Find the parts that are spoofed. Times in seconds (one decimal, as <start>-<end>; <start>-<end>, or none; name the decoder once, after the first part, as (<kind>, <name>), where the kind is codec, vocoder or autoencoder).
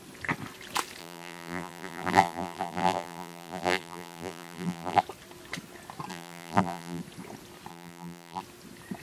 1.0-5.0 (vocoder, BigVGAN v2); 6.1-7.0; 7.7-8.4